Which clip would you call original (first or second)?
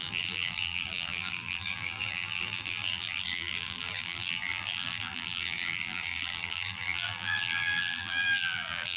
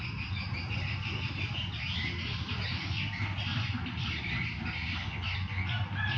second